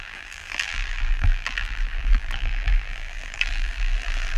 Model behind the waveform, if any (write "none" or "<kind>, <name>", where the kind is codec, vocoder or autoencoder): vocoder, BigVGAN v2